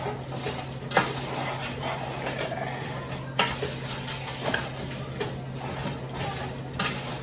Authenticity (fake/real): real